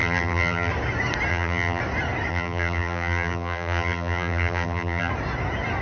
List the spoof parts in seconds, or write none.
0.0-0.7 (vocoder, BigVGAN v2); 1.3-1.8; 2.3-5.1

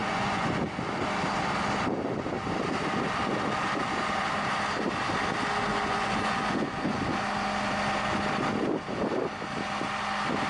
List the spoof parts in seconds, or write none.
0.0-0.5 (vocoder, Vocos); 5.7-7.0

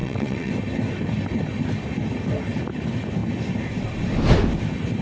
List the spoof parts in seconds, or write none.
0.0-0.5 (vocoder, WaveNeXt)

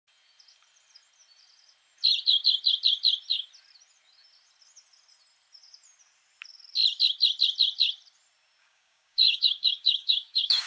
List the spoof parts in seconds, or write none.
8.6-10.7 (codec, DAC)

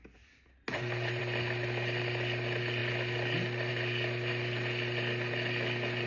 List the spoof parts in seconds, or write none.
none

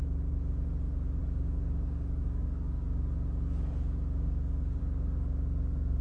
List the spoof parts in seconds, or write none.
1.2-4.8 (codec, DAC)

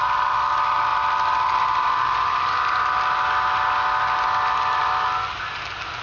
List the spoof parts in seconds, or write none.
none